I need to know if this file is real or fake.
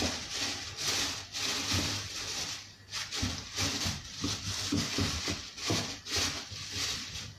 real